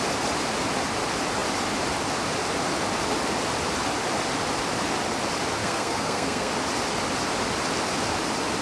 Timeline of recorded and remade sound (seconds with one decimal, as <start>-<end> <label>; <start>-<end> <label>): 0.0-5.6 recorded; 5.6-6.5 remade; 6.5-8.6 recorded